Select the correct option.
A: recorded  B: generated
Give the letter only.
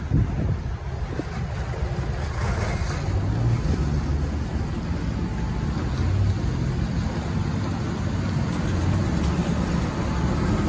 A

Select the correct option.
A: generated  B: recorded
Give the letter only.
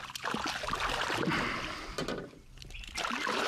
B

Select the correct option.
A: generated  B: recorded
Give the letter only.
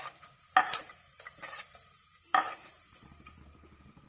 A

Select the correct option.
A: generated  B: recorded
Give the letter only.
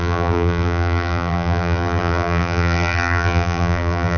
A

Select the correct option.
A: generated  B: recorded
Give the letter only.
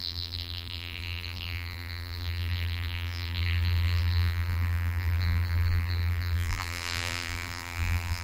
A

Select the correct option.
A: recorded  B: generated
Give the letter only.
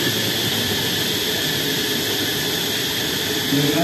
B